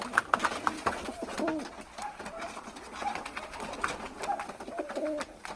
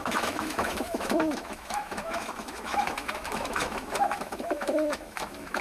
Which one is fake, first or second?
second